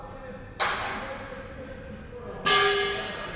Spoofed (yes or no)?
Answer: no